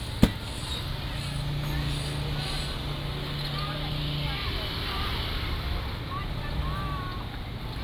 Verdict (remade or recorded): recorded